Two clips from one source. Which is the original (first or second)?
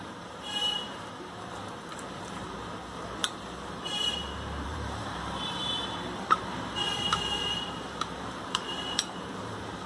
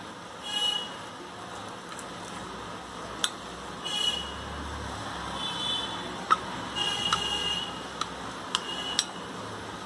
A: second